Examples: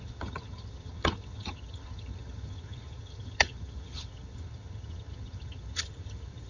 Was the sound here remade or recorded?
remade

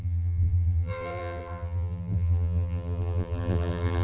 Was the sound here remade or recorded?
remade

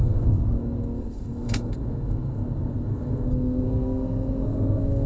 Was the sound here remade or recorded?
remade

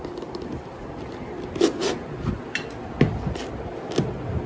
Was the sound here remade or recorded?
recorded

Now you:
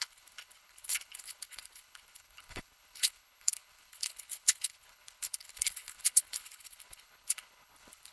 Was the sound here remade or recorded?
remade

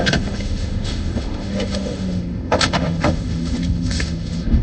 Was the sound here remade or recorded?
remade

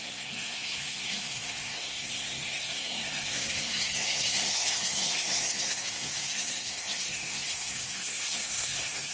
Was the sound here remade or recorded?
remade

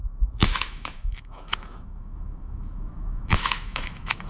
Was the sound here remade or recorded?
remade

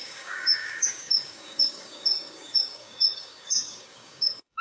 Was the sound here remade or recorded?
remade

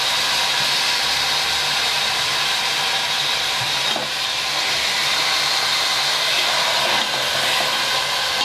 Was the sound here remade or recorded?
recorded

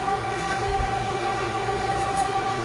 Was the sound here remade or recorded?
remade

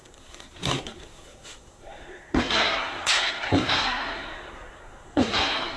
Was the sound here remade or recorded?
remade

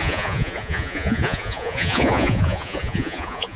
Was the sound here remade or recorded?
remade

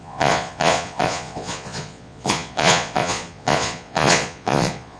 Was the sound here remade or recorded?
remade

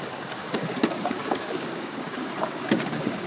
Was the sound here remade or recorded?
remade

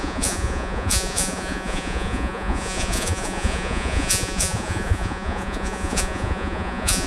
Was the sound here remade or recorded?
remade